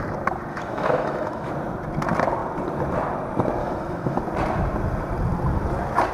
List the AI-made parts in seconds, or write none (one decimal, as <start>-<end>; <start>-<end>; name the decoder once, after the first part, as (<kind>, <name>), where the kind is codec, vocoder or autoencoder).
0.5-1.5 (autoencoder, DAC-VAE); 3.6-4.2